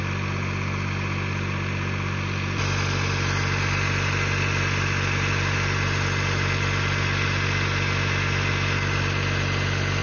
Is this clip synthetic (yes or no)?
no